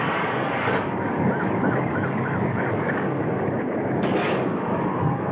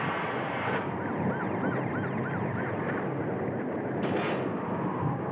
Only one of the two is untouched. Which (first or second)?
second